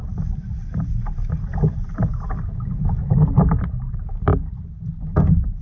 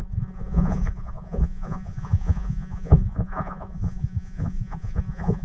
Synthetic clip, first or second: second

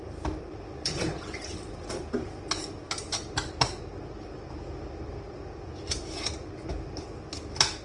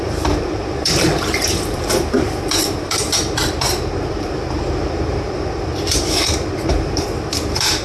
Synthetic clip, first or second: second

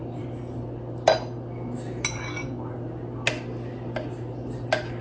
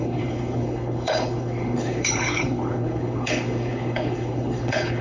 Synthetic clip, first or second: second